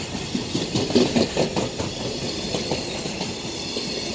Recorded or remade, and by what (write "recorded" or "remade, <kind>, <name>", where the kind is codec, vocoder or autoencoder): recorded